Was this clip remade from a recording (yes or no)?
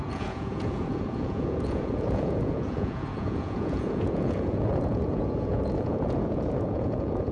yes